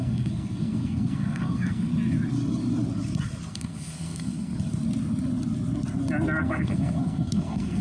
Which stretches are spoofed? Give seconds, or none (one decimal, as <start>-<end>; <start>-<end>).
0.0-1.9; 3.5-4.5; 6.4-7.8